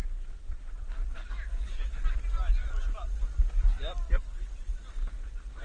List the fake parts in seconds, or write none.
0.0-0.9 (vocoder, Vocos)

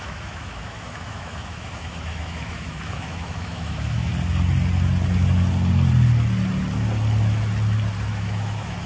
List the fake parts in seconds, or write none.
0.0-4.1 (autoencoder, DAC-VAE); 8.1-8.9

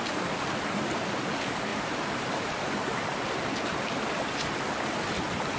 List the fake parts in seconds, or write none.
1.7-3.2 (vocoder, BigVGAN v2)